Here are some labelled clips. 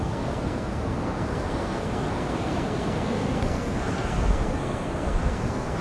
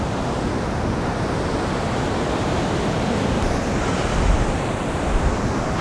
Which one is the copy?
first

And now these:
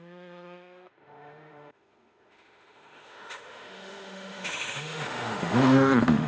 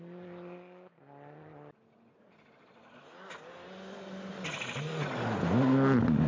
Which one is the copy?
first